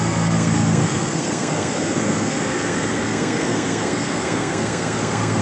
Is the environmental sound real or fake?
fake